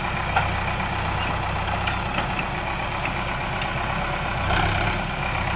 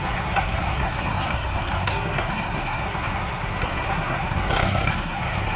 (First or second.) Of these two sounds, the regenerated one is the second